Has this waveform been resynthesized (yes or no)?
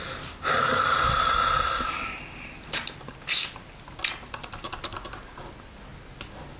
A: no